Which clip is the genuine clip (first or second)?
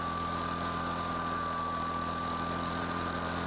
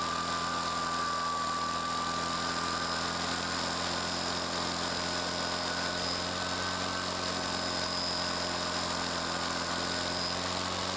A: second